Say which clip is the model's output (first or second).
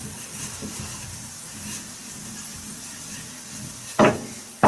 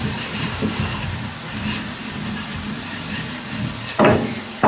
second